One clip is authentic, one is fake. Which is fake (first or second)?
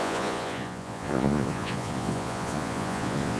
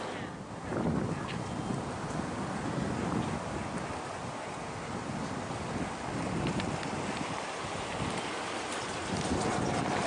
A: first